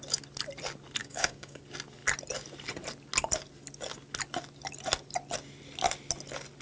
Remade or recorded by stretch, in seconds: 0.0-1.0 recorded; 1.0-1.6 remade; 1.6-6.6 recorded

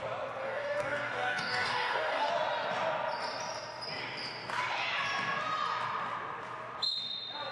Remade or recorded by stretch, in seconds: 0.0-0.4 recorded; 0.4-2.3 remade; 2.3-7.5 recorded